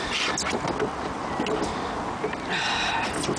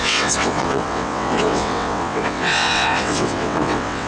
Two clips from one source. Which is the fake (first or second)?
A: second